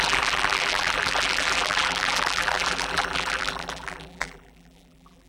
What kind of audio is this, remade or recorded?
remade